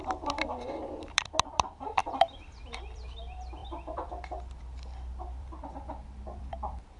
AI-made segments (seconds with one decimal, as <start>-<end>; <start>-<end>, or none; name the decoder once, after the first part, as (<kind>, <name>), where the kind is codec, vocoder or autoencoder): 0.0-7.0 (vocoder, BigVGAN v2)